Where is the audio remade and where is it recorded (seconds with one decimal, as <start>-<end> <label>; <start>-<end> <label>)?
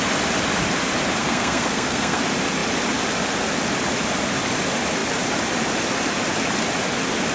0.0-1.2 recorded; 1.2-2.2 remade; 2.2-7.3 recorded